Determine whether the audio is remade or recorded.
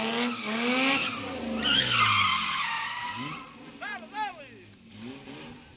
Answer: recorded